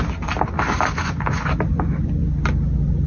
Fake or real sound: real